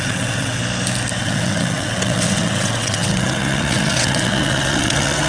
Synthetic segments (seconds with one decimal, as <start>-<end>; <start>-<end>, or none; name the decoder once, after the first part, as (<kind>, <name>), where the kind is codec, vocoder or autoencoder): 0.0-0.6 (vocoder, WaveNeXt); 1.2-5.3